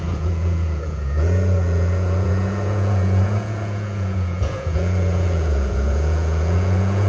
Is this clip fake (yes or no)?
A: yes